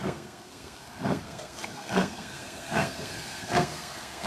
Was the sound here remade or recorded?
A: remade